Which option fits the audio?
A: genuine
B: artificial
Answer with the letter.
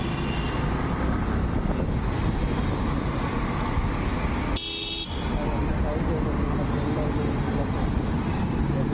A